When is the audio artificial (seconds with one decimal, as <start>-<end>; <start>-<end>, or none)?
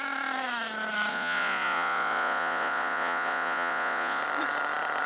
1.1-4.2